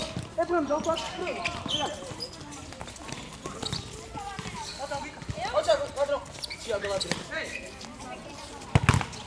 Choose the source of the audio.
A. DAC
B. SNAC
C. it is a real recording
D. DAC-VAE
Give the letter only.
C